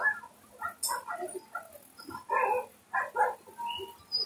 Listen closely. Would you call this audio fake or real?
real